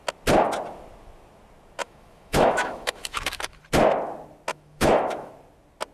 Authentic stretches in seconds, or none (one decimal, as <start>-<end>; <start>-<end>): 0.0-1.8; 3.6-4.5; 5.3-5.9

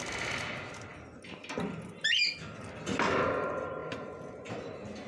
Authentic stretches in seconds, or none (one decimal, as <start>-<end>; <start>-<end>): 0.0-5.1

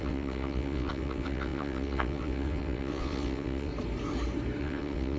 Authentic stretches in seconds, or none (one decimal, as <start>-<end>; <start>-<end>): 3.7-4.6

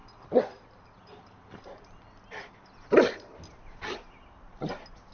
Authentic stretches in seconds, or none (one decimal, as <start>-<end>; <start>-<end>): 1.9-5.1

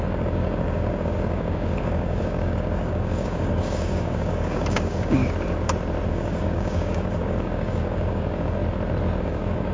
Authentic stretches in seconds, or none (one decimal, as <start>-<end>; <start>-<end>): 5.2-6.1; 8.6-9.2

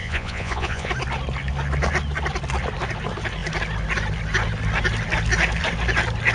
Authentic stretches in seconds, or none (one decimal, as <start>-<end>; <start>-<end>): 0.9-6.3

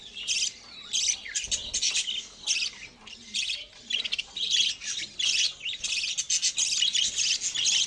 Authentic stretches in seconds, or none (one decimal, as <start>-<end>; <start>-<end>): 0.0-7.9